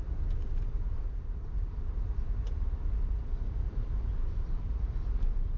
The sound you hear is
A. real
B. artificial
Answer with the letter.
B